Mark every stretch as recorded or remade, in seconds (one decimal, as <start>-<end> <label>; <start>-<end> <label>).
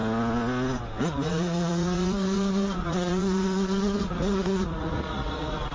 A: 0.0-1.0 recorded; 1.0-5.7 remade